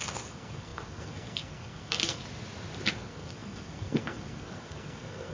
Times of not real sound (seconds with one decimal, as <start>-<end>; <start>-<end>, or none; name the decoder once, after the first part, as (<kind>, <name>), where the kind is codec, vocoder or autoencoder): 0.0-2.2 (codec, SNAC); 2.9-5.3